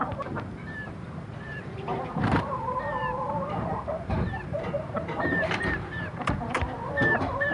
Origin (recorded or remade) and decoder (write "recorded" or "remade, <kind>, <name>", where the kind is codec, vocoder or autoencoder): remade, vocoder, BigVGAN v2